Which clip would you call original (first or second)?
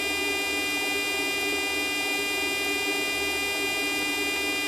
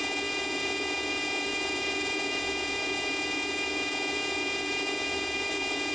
first